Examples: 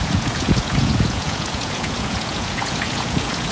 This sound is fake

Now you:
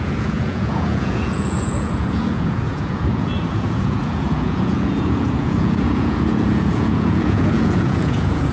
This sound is fake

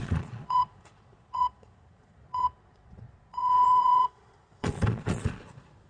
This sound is fake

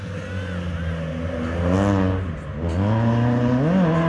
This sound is real